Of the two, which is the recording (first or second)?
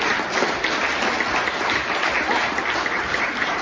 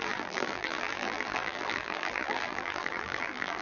first